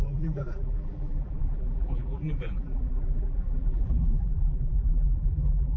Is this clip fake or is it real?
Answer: fake